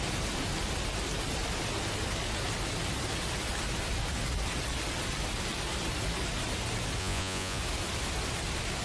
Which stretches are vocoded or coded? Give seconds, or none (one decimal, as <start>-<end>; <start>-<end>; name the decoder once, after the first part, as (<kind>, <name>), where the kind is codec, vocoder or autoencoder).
7.0-7.6 (vocoder, Vocos)